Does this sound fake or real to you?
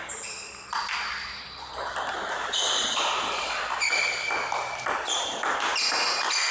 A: real